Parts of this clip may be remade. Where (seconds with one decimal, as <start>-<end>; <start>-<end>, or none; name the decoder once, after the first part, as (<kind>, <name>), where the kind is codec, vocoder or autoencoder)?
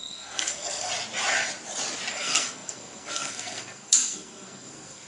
0.0-0.9 (codec, SNAC); 2.1-5.1